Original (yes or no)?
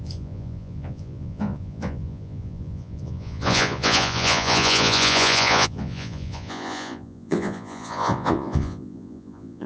no